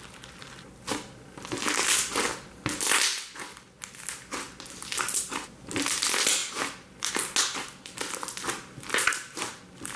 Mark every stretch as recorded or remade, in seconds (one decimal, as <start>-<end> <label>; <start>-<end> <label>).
0.0-10.0 recorded